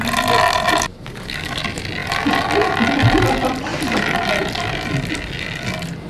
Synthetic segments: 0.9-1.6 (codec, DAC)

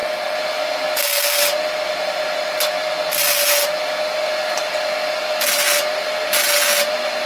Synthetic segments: none

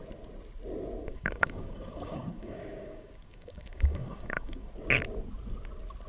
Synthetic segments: 1.0-4.7 (codec, DAC)

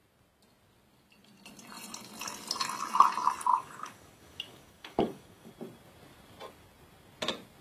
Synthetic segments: 3.5-5.5 (codec, DAC)

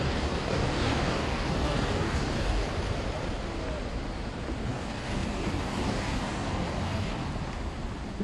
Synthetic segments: 0.0-2.6 (codec, DAC); 4.6-7.2

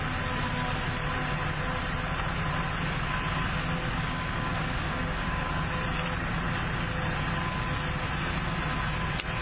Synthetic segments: 3.9-5.5 (codec, DAC)

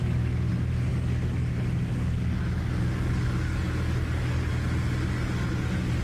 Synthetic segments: 0.0-0.5 (codec, DAC); 0.9-4.5

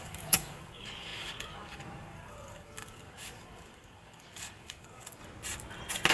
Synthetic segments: 0.0-5.2 (codec, DAC)